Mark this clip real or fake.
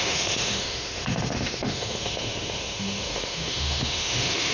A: fake